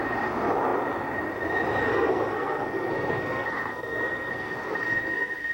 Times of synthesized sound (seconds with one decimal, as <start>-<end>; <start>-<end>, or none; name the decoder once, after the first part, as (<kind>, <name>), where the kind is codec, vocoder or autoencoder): 1.9-5.5 (codec, SNAC)